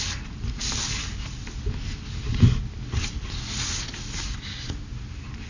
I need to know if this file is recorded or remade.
recorded